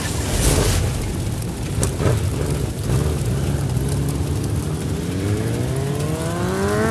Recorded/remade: recorded